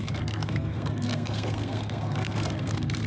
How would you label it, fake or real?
fake